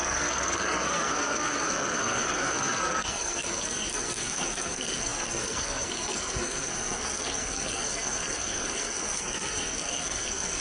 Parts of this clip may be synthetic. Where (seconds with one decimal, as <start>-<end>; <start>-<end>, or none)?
0.0-10.6